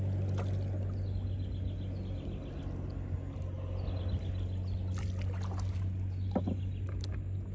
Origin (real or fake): real